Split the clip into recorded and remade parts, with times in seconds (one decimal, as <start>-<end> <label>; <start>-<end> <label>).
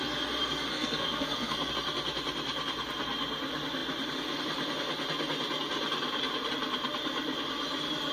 0.0-0.7 recorded; 0.7-1.7 remade; 1.7-8.1 recorded